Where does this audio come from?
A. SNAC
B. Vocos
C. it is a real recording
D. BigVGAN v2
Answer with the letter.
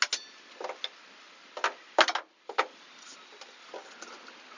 C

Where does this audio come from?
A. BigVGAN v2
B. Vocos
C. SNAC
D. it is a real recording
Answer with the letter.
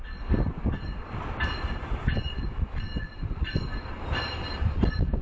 D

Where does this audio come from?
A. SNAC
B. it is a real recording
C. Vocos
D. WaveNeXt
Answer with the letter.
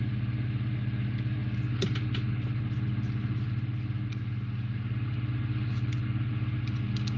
B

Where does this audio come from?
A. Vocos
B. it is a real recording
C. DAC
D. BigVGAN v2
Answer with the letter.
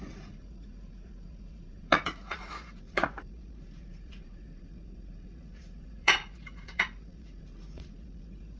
A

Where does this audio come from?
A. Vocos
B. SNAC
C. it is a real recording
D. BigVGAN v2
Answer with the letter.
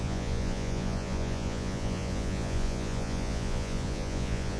A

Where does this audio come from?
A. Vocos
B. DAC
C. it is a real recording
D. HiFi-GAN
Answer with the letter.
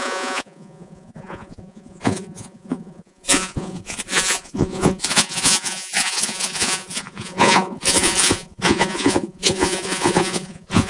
A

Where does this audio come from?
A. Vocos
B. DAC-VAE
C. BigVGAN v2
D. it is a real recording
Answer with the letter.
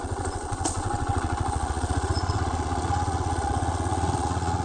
A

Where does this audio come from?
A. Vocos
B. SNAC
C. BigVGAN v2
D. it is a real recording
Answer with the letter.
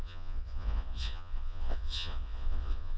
A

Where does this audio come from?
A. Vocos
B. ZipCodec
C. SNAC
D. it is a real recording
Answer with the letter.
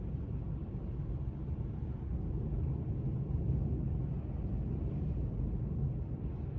D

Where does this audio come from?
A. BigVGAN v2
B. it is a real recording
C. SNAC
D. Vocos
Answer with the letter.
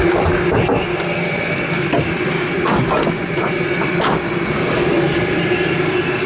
B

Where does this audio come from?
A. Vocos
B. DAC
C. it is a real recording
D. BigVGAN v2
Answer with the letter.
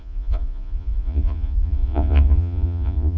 A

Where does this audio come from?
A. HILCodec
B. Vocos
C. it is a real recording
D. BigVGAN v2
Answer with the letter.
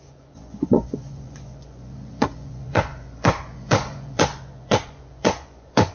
B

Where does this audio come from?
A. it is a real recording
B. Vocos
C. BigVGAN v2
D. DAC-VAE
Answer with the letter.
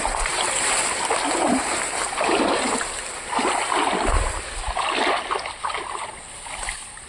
A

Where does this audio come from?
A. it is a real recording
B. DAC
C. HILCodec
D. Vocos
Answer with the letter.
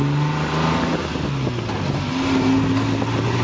A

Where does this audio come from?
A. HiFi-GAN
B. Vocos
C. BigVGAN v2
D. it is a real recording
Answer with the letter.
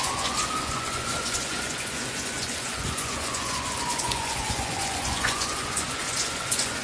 B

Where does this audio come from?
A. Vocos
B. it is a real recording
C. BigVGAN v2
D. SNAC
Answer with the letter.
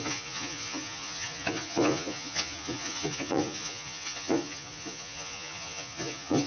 A